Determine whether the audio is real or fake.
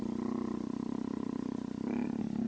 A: real